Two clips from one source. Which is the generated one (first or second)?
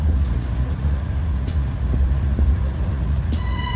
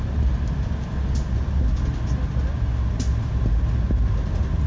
first